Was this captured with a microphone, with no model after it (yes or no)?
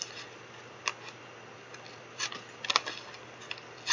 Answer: yes